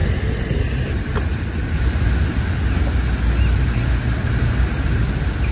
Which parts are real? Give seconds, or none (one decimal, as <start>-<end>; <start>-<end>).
0.0-5.5